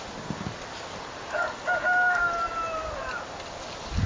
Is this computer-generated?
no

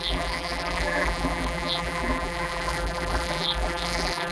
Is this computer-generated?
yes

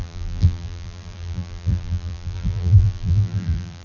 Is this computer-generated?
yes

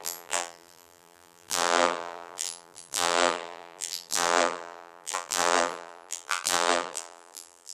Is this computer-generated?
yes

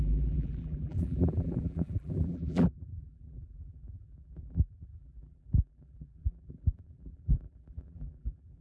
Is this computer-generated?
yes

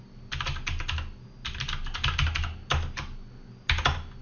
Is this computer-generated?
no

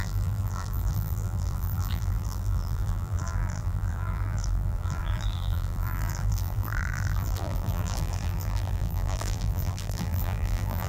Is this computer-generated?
yes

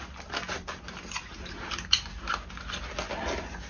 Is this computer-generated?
no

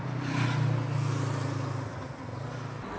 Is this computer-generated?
no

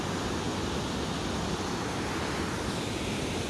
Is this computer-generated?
no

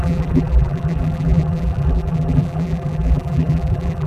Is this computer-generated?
yes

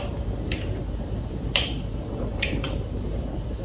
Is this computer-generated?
yes